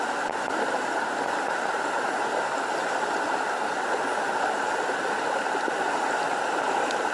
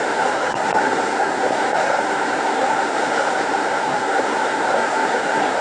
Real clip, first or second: first